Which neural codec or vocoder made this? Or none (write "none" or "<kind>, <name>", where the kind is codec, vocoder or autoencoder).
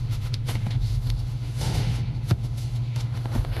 autoencoder, DAC-VAE